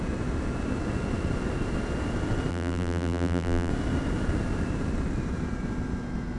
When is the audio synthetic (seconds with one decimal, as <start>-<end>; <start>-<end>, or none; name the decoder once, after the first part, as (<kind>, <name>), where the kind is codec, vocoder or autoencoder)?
2.5-3.7 (vocoder, BigVGAN v2)